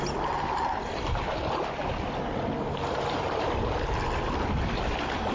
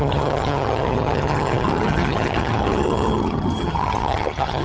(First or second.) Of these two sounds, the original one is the first